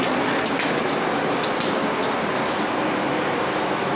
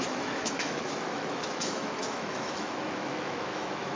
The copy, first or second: second